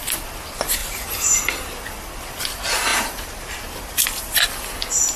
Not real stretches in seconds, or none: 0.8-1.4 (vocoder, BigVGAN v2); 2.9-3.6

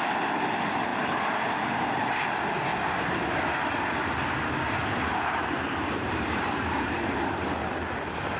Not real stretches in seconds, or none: 4.8-7.3 (vocoder, BigVGAN v2)

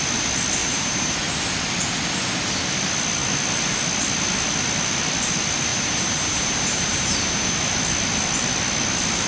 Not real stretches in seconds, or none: 0.6-1.4 (vocoder, BigVGAN v2); 5.7-7.6